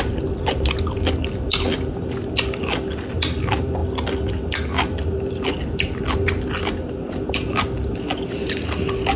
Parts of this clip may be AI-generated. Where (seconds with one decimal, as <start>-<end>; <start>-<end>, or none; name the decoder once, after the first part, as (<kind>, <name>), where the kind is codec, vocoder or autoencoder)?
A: none